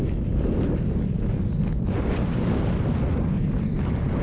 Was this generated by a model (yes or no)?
no